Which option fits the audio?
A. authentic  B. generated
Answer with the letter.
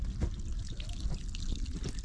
A